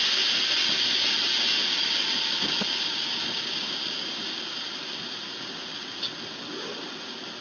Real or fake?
real